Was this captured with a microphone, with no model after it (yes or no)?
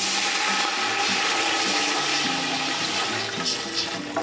yes